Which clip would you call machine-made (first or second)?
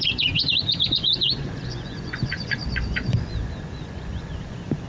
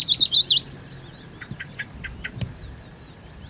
first